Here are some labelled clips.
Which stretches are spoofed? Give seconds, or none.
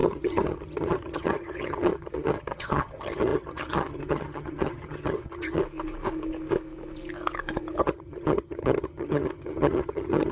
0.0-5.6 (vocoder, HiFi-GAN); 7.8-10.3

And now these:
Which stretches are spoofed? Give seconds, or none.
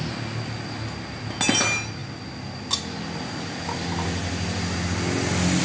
none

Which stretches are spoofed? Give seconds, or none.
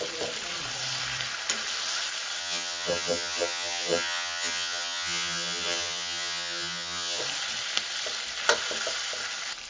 2.4-7.2 (vocoder, HiFi-GAN)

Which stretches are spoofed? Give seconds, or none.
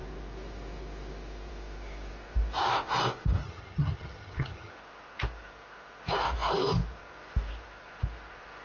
3.4-4.7 (vocoder, HiFi-GAN)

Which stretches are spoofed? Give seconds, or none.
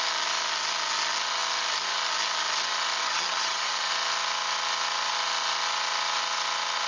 3.0-3.9 (vocoder, HiFi-GAN)